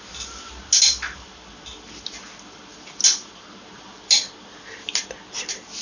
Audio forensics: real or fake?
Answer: real